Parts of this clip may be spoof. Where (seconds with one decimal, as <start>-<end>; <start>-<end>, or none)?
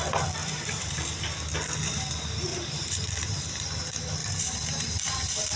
0.4-1.0; 2.5-3.5; 4.2-5.6